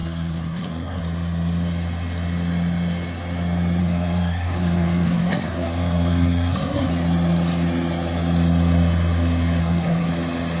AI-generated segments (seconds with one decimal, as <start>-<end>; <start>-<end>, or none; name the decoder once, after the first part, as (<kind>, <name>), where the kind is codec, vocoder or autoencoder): 0.0-1.0 (codec, SNAC); 3.8-6.9; 9.6-10.1